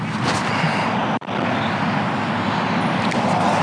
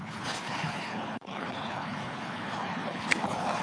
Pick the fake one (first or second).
second